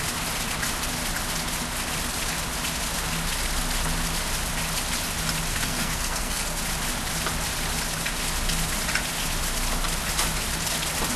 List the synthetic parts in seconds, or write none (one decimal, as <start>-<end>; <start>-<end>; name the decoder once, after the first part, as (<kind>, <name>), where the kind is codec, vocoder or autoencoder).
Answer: 5.5-6.6 (codec, SNAC)